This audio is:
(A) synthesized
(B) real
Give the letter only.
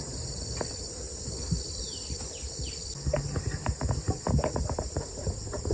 B